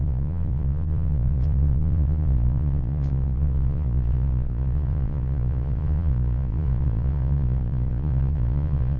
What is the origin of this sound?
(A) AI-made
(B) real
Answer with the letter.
A